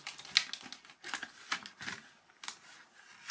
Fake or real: real